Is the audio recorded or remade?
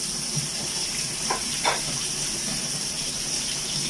remade